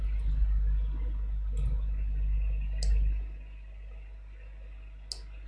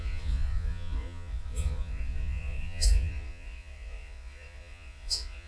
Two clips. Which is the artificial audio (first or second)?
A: second